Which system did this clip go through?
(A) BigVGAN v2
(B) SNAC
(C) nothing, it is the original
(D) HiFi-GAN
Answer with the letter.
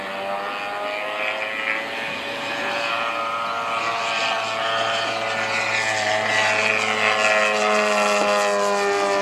C